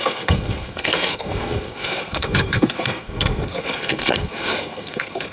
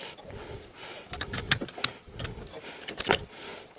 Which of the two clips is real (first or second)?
second